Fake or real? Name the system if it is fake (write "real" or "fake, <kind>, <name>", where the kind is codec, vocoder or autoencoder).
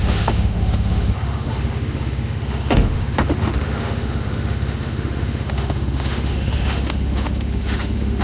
fake, autoencoder, DAC-VAE